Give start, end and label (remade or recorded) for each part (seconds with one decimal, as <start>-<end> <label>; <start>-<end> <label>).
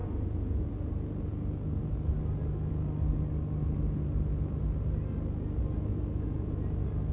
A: 0.0-0.7 remade; 0.7-5.9 recorded; 5.9-6.5 remade; 6.5-7.1 recorded